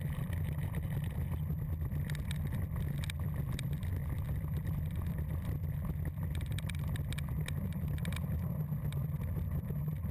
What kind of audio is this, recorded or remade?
recorded